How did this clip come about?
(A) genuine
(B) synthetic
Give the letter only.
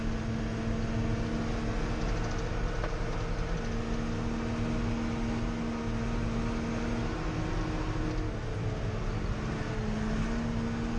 A